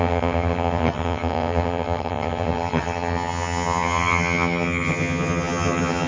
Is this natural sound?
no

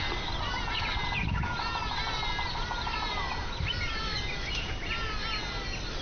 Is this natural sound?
yes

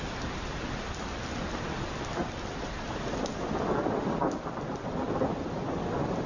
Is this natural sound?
yes